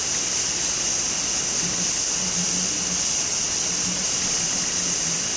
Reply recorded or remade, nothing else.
recorded